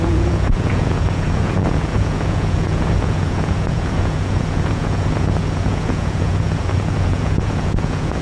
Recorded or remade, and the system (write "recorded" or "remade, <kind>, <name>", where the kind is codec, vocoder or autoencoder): remade, vocoder, Vocos